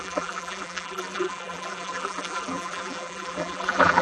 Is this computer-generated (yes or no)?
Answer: yes